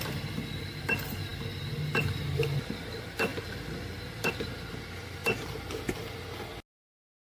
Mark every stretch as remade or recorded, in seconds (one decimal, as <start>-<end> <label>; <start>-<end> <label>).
0.0-3.3 recorded; 3.3-4.3 remade; 4.3-7.2 recorded